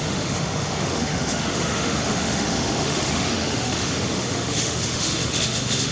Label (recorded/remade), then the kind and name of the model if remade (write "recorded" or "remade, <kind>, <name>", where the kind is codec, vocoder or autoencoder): remade, autoencoder, DAC-VAE